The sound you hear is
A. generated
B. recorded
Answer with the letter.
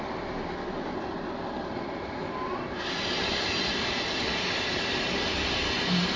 B